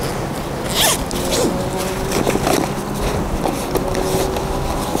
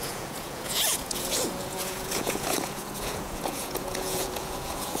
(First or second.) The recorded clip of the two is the first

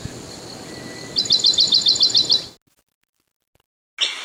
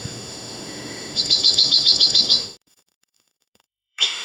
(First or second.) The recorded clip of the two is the first